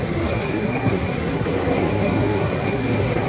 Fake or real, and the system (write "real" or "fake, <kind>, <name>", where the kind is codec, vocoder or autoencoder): fake, codec, SNAC